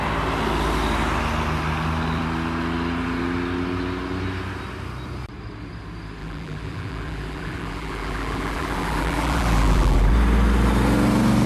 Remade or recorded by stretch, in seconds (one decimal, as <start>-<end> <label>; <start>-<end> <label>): 0.0-6.2 recorded; 6.2-10.1 remade; 10.1-11.5 recorded